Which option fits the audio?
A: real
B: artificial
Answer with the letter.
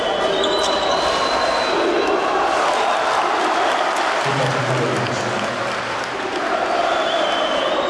A